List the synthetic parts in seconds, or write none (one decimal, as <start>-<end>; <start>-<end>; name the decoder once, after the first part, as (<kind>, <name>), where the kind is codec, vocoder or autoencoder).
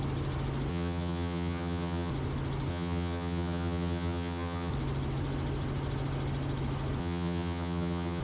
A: 0.7-2.1 (vocoder, HiFi-GAN); 2.7-4.7; 7.0-8.2